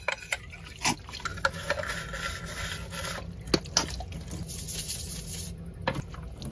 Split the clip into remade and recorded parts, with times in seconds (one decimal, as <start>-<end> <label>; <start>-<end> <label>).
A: 0.0-6.5 recorded